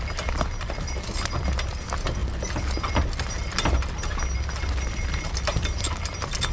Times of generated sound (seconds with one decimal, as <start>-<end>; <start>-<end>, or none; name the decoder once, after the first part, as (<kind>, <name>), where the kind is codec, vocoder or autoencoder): none